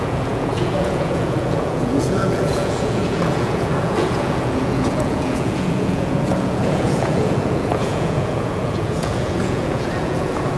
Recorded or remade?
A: remade